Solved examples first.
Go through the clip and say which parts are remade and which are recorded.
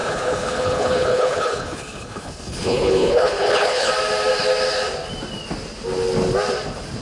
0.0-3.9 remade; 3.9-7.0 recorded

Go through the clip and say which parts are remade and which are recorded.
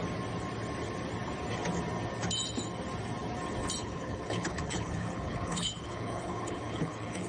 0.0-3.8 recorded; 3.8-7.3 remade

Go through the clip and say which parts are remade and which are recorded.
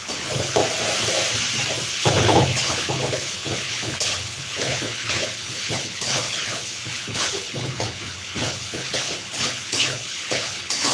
0.0-0.6 remade; 0.6-1.9 recorded; 1.9-10.9 remade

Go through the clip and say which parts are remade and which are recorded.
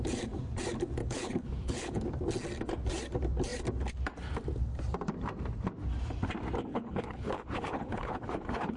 0.0-1.0 recorded; 1.0-2.0 remade; 2.0-6.7 recorded; 6.7-8.8 remade